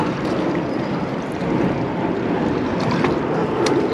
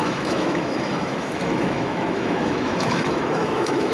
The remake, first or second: second